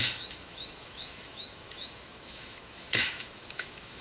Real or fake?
fake